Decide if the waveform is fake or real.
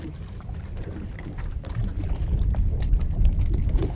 real